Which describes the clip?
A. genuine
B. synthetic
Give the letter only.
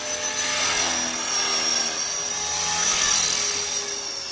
A